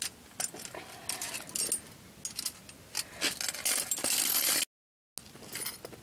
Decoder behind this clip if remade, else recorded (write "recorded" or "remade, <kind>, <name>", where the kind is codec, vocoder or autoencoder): recorded